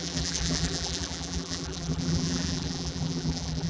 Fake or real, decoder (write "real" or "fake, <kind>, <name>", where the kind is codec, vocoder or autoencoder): fake, vocoder, BigVGAN v2